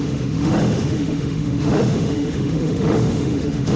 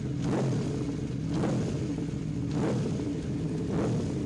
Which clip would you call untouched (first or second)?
second